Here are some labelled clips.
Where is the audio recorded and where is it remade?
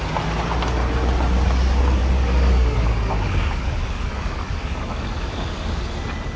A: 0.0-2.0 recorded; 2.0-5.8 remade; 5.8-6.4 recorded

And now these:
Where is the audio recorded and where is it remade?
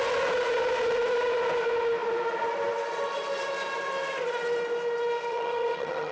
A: 0.0-5.3 recorded; 5.3-6.1 remade